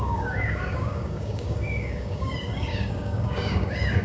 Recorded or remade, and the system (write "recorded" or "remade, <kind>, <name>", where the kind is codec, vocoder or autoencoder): remade, codec, DAC